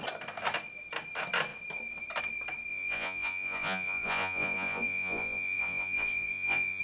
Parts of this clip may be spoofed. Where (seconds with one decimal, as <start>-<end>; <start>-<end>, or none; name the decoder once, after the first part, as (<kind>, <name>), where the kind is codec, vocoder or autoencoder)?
2.7-6.8 (vocoder, Vocos)